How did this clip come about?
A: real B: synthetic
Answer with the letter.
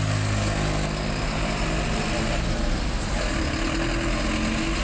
A